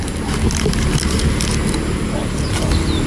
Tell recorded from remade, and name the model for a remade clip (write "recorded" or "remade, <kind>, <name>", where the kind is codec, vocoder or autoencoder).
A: recorded